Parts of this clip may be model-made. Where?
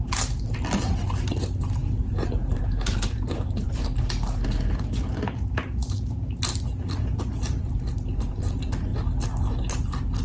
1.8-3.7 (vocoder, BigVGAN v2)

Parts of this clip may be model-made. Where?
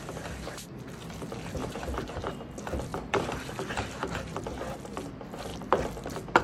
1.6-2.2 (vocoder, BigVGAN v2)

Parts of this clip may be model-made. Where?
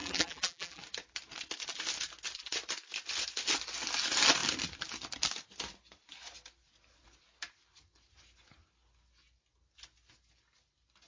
0.0-0.8 (vocoder, BigVGAN v2)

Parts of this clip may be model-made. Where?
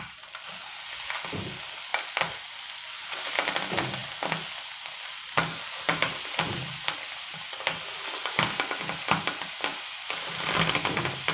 none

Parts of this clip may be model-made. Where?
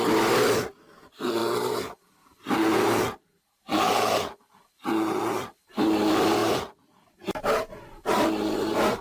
none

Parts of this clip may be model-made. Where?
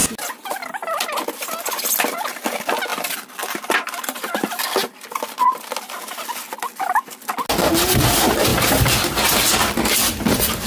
2.9-4.3 (vocoder, BigVGAN v2); 8.5-10.7